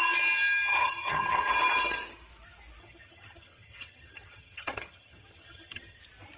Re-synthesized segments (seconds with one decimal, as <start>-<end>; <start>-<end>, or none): 0.7-1.5; 2.8-6.0